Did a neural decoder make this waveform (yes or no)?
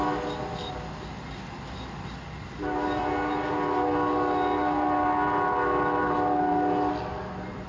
no